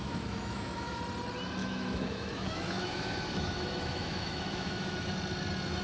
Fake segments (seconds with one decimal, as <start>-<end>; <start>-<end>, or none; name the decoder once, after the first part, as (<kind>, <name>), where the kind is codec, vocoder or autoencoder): 0.0-1.0 (autoencoder, DAC-VAE); 1.6-5.1